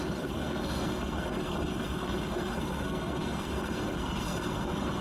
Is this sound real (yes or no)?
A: no